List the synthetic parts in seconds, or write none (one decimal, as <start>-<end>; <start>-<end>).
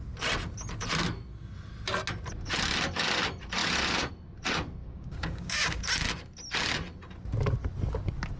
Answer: 4.8-5.8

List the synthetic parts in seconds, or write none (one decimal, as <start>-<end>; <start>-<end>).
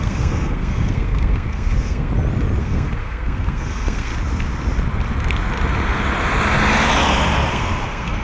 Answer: 0.0-2.1; 2.6-4.1; 7.5-8.2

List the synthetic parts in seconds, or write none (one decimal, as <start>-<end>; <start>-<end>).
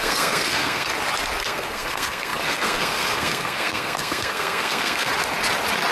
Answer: 0.0-0.9; 1.4-5.1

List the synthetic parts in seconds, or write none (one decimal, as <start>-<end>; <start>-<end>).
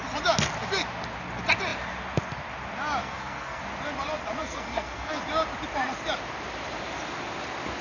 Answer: 3.0-3.6; 4.4-5.2